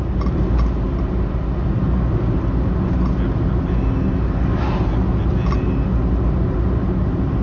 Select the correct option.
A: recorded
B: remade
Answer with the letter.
A